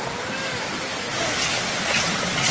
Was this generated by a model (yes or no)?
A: no